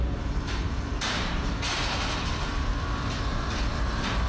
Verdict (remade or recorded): remade